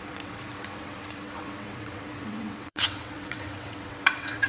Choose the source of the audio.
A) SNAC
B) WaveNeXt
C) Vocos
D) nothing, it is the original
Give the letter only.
B